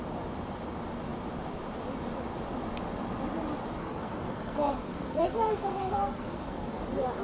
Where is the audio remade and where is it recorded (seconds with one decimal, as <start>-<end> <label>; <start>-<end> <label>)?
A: 0.0-3.8 recorded; 3.8-6.8 remade; 6.8-7.2 recorded